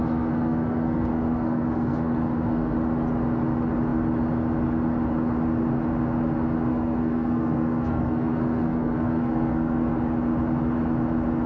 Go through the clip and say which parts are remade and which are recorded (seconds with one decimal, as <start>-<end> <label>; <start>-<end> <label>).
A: 0.0-2.7 remade; 2.7-6.7 recorded; 6.7-9.9 remade; 9.9-11.5 recorded